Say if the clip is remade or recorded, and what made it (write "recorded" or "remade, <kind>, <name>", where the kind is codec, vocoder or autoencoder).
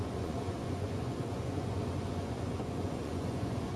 remade, vocoder, Vocos